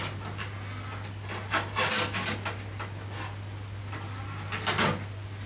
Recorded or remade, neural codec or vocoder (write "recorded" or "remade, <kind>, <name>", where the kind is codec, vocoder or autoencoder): recorded